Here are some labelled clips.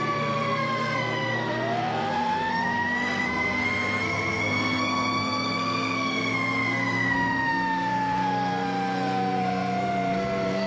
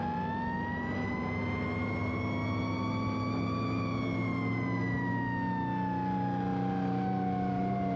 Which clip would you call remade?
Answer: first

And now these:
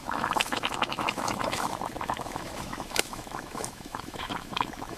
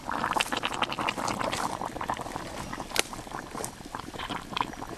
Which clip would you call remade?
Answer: first